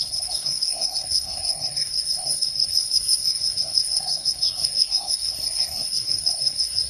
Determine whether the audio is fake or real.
fake